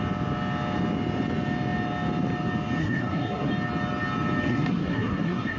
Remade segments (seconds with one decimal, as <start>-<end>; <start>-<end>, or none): 2.8-3.5; 4.5-5.6